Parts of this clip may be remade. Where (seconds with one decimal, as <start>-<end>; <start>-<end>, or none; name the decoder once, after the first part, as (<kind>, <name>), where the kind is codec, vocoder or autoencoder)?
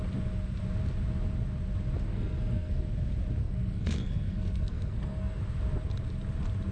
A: 2.1-2.8 (codec, SNAC); 3.4-5.4